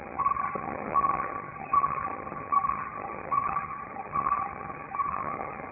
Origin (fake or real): fake